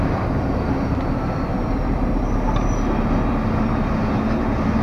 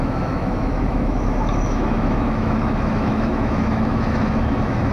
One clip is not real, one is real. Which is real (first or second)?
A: first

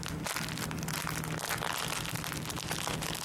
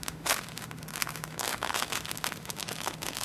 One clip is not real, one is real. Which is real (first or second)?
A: first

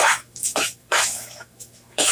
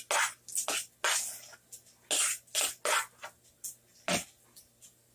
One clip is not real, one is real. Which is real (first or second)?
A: second